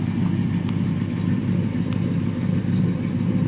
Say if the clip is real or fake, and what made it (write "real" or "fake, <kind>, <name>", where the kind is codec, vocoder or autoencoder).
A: real